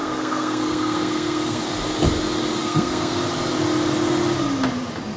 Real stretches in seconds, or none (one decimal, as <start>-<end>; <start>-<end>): 1.6-2.6; 3.2-5.2